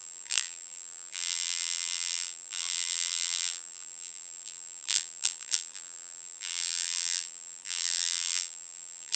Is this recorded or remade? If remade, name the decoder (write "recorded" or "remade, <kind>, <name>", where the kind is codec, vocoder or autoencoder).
remade, vocoder, BigVGAN v2